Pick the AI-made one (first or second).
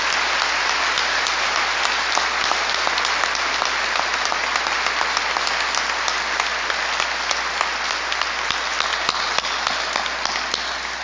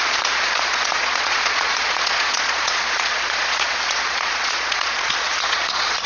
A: second